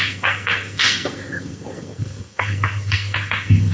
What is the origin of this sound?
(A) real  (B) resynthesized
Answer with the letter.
B